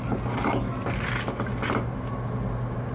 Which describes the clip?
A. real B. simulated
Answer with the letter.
A